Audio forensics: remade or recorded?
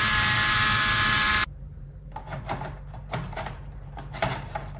remade